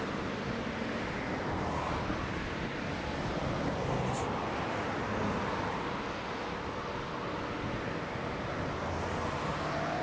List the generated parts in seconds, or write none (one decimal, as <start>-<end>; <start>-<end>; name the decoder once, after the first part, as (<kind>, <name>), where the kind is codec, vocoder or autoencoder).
none